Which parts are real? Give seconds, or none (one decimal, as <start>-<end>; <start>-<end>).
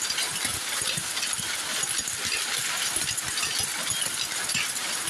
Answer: 0.0-0.5; 3.0-5.1